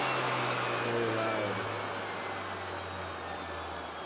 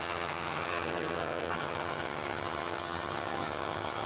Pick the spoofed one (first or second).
second